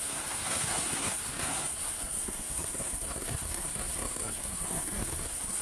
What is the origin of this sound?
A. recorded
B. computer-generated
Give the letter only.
B